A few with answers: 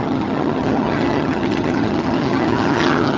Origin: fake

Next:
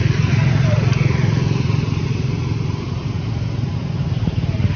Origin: real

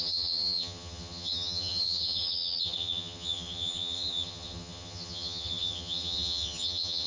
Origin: fake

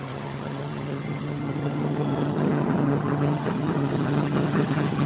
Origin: fake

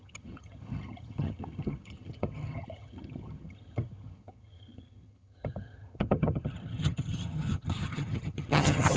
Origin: fake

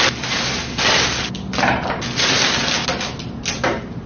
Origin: real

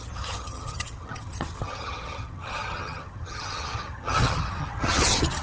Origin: fake